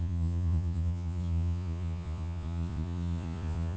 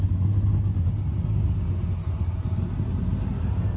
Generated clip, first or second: first